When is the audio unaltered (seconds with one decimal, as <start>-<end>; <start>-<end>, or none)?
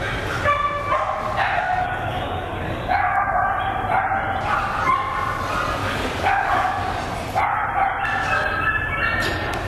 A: 0.0-1.6; 3.5-5.8; 7.0-9.7